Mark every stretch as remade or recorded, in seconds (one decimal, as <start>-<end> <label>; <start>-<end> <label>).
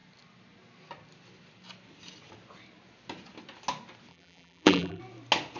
0.0-4.1 recorded; 4.1-5.0 remade; 5.0-5.6 recorded